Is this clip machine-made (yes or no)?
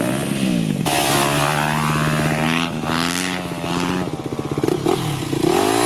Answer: no